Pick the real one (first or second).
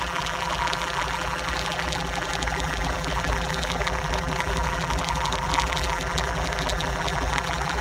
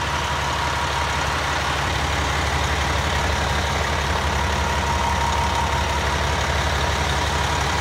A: second